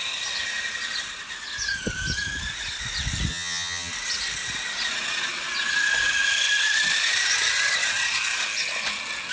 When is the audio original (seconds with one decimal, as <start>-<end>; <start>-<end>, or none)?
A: 0.0-3.3; 3.9-9.3